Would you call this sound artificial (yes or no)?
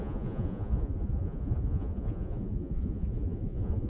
yes